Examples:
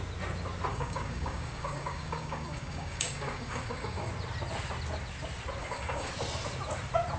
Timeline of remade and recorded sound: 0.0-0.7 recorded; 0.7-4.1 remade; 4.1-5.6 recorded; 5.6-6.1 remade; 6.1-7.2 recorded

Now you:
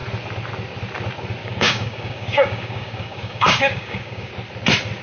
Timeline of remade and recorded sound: 0.0-1.4 recorded; 1.4-4.3 remade; 4.3-5.0 recorded

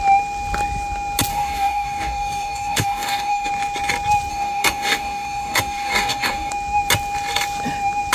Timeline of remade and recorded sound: 0.0-1.3 recorded; 1.3-3.5 remade; 3.5-4.3 recorded; 4.3-6.5 remade; 6.5-8.1 recorded

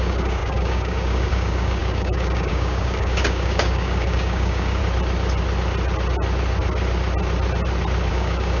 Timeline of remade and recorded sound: 0.0-4.8 remade; 4.8-8.1 recorded; 8.1-8.6 remade

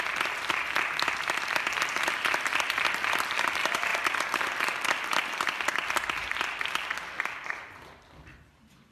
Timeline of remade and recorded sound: 0.0-8.9 recorded

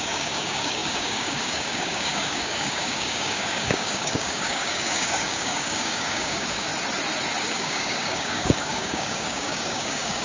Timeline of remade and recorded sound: 0.0-6.7 remade; 6.7-7.4 recorded; 7.4-10.2 remade